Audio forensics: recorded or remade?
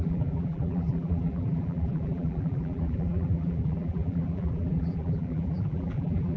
remade